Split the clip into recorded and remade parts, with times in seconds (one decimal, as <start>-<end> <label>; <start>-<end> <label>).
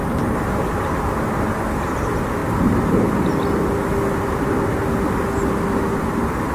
0.0-6.5 recorded